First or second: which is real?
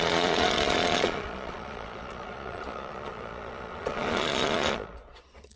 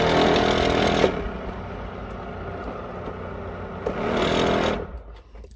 second